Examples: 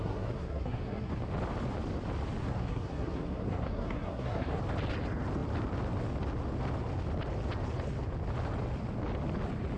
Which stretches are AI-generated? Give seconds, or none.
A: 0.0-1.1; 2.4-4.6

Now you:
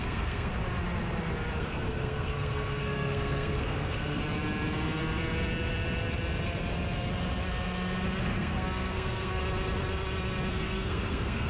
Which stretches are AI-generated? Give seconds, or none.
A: 0.0-0.5; 1.6-4.2; 8.2-9.4; 10.5-11.5

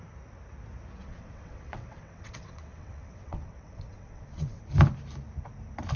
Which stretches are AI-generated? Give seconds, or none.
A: 1.0-4.6

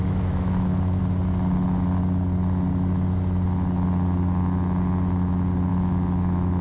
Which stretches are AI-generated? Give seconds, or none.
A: 0.0-1.0; 5.7-6.6

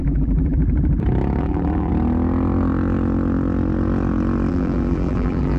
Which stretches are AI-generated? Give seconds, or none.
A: 0.0-0.6; 1.4-1.9; 4.5-5.6